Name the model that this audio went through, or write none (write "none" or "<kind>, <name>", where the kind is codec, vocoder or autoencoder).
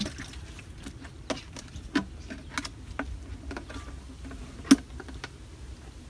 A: none